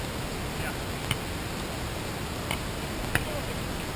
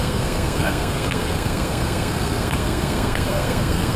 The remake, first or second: second